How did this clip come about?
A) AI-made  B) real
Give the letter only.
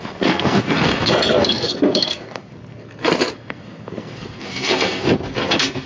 A